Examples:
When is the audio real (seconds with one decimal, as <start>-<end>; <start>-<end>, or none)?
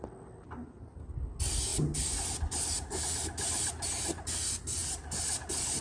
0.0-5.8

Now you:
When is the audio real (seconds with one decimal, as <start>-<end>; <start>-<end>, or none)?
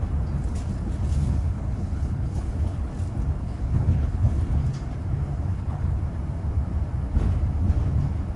0.0-1.2; 2.9-3.4; 4.3-5.5; 6.0-8.4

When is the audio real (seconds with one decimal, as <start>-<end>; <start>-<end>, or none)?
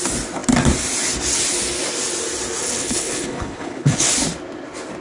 0.0-2.6; 4.1-5.0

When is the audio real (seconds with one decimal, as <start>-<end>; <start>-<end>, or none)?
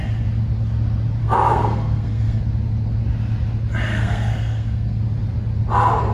0.0-1.2; 2.4-3.9; 5.0-6.1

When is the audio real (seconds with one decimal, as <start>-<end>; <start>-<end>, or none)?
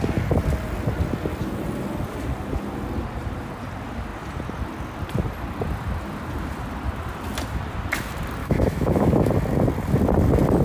0.0-8.4; 9.3-10.6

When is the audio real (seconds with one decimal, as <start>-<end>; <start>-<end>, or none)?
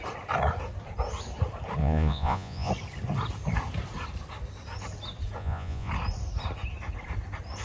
0.0-1.8; 2.7-5.4; 5.9-7.6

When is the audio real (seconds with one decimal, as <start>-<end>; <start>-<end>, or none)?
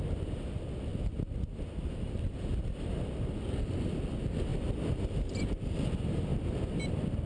0.0-4.5; 5.7-6.3